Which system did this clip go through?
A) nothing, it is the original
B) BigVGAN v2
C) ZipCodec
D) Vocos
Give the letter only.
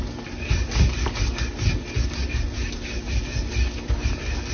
A